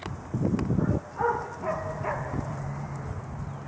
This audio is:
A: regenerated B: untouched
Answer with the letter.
B